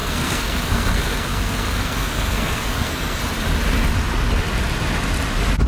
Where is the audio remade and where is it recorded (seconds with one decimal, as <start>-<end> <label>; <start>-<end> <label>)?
0.0-3.2 remade; 3.2-5.7 recorded